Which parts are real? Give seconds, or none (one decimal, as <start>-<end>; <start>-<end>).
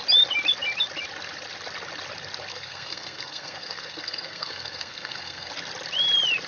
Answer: 0.0-2.5; 5.5-6.5